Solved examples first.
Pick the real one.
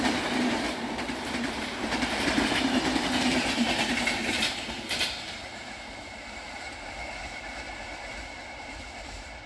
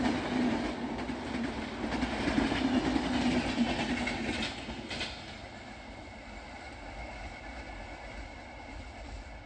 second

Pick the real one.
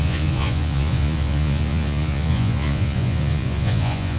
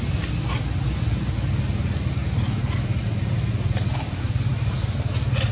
second